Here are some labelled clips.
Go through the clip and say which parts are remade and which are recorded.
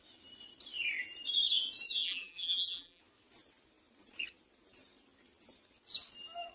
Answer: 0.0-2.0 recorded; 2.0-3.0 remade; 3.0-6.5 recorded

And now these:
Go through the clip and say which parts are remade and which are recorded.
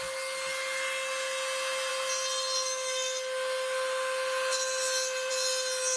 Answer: 0.0-6.0 recorded